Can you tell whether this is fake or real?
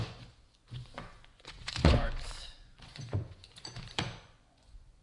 fake